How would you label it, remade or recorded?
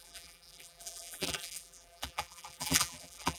remade